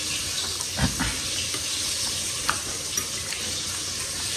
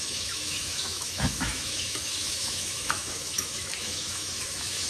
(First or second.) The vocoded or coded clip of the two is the second